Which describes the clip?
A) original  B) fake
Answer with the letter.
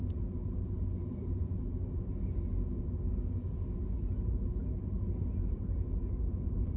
A